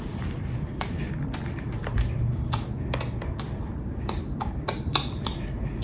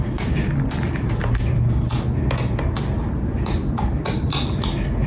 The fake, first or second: first